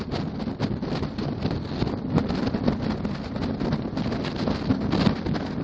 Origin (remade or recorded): recorded